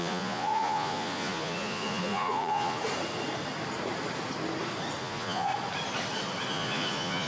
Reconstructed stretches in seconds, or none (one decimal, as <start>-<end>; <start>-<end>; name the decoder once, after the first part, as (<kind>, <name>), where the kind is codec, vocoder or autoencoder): 0.0-2.8 (vocoder, Vocos); 5.0-5.5; 6.5-7.3

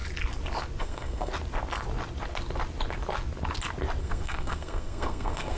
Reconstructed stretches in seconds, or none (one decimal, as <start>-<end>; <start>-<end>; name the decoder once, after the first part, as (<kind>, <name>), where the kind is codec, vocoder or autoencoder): 0.8-1.3 (codec, SNAC); 4.0-5.6

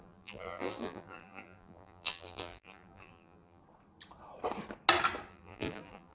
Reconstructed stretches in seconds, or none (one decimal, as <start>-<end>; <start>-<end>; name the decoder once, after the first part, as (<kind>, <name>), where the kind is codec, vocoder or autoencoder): 0.0-3.6 (vocoder, BigVGAN v2); 5.3-6.1

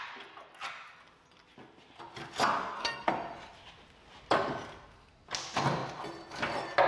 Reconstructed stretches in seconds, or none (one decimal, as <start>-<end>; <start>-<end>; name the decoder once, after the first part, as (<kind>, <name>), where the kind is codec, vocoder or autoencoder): 2.6-3.1 (codec, SNAC)

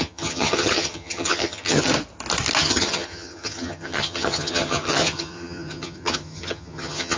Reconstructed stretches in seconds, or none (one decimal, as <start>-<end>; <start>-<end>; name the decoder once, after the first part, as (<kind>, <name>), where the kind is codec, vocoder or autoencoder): 0.0-1.9 (vocoder, HiFi-GAN); 2.6-7.2

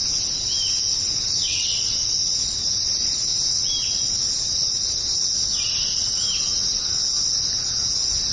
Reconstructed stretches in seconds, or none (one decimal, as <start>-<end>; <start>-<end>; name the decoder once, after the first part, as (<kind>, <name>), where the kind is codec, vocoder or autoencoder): none

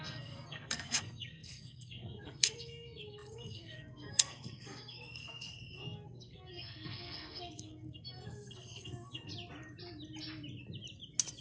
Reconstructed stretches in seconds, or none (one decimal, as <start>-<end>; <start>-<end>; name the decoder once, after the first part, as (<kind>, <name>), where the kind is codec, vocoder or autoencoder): 0.0-9.3 (codec, SNAC)